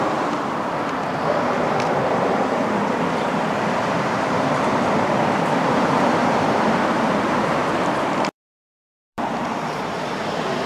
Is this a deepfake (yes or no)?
yes